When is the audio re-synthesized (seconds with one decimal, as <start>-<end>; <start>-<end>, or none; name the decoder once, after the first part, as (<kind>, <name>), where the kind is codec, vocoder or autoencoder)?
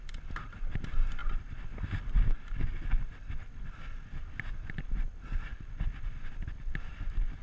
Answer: none